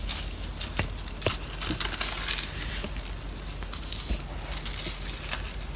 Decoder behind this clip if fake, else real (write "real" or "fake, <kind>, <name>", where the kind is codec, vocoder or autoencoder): real